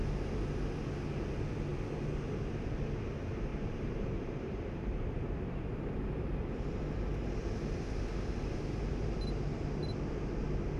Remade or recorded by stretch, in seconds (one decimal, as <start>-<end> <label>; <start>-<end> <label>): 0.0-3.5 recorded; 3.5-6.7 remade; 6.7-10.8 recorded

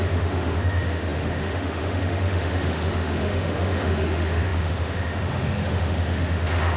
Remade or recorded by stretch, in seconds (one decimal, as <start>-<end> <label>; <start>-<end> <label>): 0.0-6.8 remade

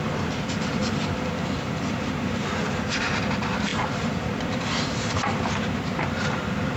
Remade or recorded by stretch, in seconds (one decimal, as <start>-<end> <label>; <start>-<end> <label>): 0.0-0.8 remade; 0.8-1.7 recorded; 1.7-6.8 remade